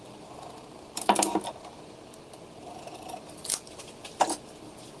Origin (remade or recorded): recorded